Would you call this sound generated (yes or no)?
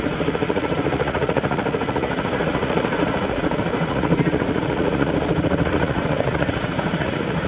yes